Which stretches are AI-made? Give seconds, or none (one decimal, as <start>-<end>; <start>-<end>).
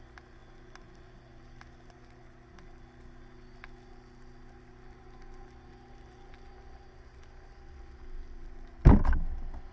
none